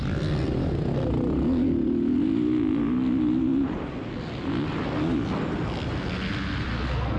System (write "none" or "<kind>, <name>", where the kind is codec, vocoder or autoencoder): none